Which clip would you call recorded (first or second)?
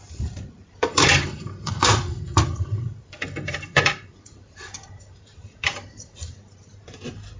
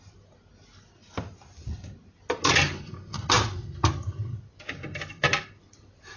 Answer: second